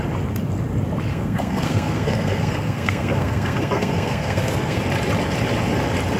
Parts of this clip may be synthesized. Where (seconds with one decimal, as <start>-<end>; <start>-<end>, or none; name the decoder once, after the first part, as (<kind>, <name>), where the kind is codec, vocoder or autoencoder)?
1.1-4.8 (codec, SNAC)